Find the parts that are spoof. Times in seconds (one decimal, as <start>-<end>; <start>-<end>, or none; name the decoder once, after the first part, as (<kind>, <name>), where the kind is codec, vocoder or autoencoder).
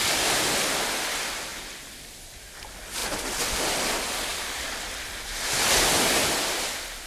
4.3-4.8 (codec, DAC)